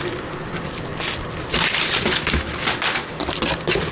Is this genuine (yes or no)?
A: yes